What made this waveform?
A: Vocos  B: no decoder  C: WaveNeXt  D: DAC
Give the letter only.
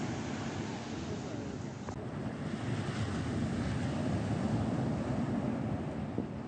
B